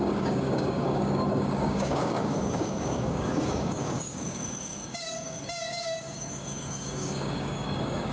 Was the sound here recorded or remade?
remade